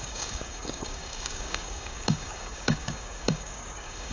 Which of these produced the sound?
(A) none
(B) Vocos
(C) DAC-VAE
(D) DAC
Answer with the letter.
D